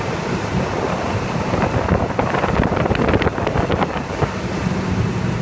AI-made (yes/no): no